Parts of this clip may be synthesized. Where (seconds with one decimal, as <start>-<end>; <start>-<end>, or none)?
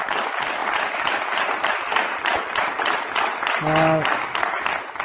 0.6-3.6